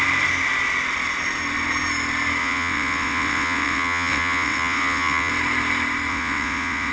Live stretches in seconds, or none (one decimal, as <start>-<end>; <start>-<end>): 0.0-2.4; 5.3-6.1

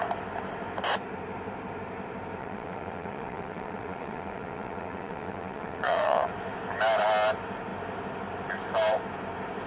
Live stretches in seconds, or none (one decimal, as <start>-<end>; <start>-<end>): 0.0-2.4; 6.3-9.7

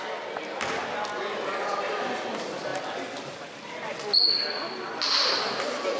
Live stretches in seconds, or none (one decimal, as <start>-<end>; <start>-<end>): 0.0-6.0

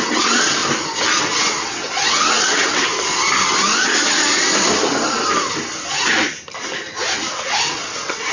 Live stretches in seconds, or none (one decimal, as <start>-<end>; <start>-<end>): 0.6-1.2; 2.9-7.3

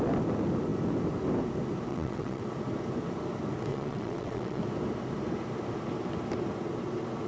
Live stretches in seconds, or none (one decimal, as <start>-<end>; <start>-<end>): 0.0-1.9; 2.4-3.7; 4.6-7.3